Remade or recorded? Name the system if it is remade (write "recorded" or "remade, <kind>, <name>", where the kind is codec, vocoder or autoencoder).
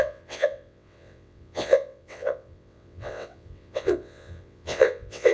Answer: remade, vocoder, WaveNeXt